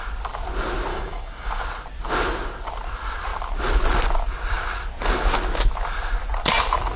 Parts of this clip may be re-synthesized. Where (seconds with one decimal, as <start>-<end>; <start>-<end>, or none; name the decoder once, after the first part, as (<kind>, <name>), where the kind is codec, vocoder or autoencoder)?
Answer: 0.9-1.6 (codec, DAC)